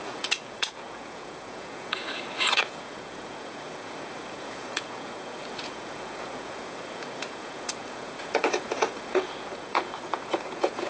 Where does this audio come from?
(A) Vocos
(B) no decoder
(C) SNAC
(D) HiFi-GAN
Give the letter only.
A